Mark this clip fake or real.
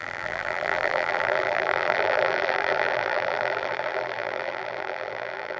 fake